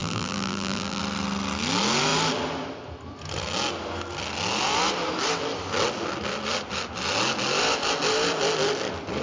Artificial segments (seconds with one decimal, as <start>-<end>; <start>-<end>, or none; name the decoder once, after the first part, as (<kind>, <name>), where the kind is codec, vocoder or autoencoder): 0.0-1.0 (vocoder, BigVGAN v2)